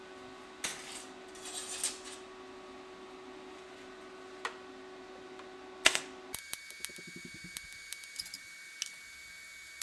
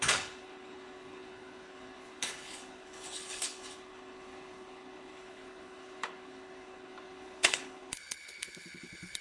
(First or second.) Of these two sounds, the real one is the first